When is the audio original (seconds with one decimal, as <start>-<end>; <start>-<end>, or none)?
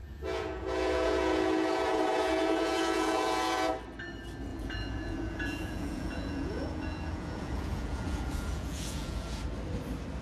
3.7-4.5; 9.4-10.2